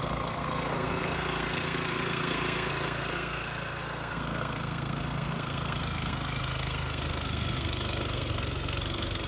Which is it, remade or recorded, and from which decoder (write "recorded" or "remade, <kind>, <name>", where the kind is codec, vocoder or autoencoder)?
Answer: remade, codec, SNAC